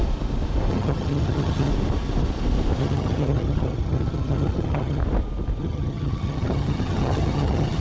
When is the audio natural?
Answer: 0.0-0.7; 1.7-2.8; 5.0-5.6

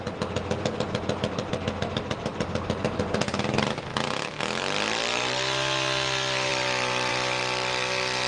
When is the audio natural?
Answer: 0.0-8.3

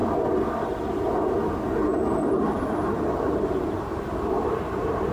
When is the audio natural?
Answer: 0.0-1.8

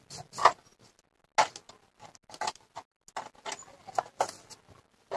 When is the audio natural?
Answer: 0.0-5.2

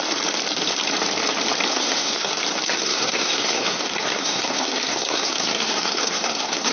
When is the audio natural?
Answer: 0.0-1.7; 2.3-2.7

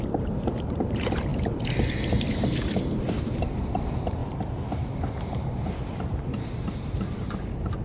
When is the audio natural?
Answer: 1.3-2.2; 4.2-5.1

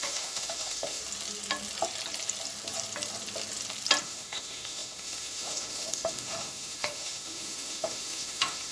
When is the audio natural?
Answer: 1.0-4.0